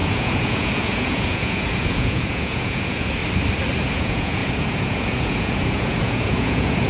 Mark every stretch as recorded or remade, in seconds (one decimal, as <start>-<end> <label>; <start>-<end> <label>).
0.0-3.2 remade; 3.2-3.8 recorded; 3.8-6.9 remade